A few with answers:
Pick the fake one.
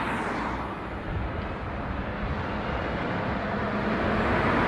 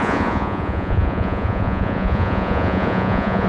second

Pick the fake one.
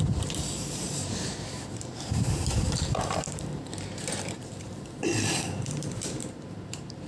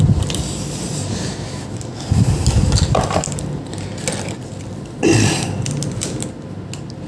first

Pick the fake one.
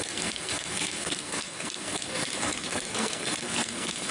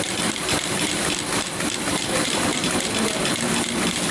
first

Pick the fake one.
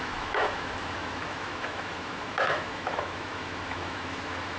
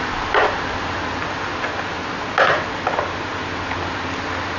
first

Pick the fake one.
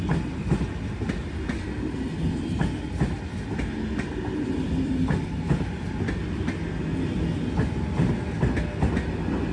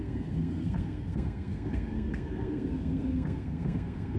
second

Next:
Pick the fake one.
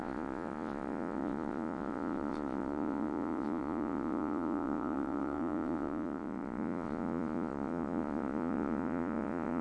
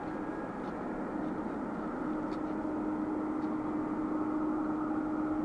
first